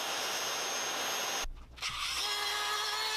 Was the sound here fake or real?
real